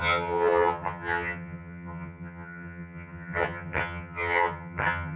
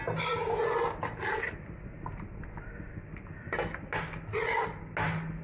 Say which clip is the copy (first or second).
first